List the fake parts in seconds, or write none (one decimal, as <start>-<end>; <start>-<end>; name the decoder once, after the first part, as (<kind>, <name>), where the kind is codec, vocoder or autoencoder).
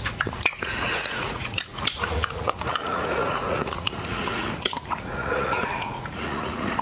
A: 0.0-6.8 (vocoder, Vocos)